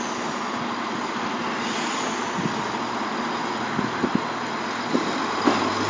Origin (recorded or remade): recorded